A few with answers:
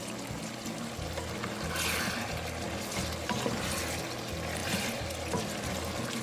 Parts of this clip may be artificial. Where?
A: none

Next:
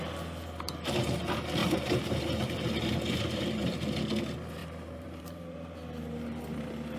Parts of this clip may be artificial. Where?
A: 1.6-3.6 (vocoder, BigVGAN v2); 4.6-6.4

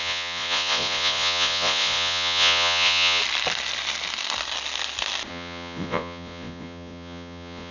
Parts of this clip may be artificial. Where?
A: 0.0-3.2 (vocoder, Vocos); 5.3-7.7

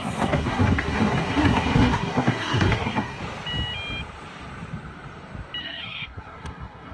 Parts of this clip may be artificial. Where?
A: 0.0-3.2 (codec, SNAC); 5.6-6.9

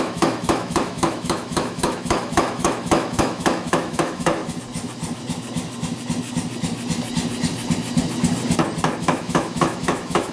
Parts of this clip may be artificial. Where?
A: 0.0-4.4 (autoencoder, DAC-VAE); 9.0-10.3

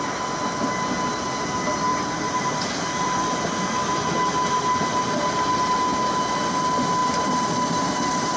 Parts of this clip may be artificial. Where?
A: 1.9-4.1 (vocoder, BigVGAN v2); 7.0-8.4